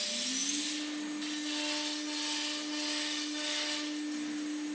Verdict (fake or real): real